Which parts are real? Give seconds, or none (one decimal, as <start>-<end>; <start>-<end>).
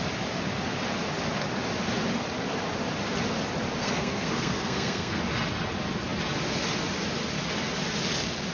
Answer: 0.0-3.8; 5.2-8.5